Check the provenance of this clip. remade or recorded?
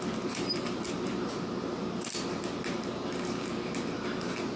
recorded